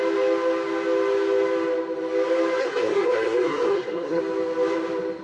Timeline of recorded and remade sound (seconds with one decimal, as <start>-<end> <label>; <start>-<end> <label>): 0.0-2.6 recorded; 2.6-4.2 remade; 4.2-5.2 recorded